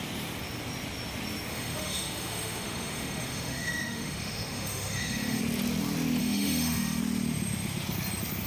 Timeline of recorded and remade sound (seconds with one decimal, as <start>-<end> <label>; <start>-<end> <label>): 0.0-1.5 recorded; 1.5-5.4 remade; 5.4-6.2 recorded; 6.2-7.0 remade; 7.0-8.5 recorded